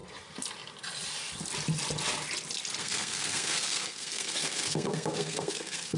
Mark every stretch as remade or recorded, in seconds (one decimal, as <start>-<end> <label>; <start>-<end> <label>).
0.0-2.8 recorded; 2.8-6.0 remade